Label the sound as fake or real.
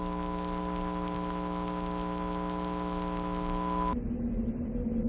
real